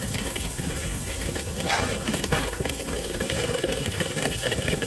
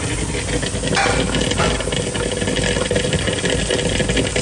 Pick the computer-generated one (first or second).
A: first